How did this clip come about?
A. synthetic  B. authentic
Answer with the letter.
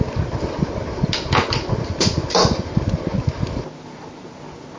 B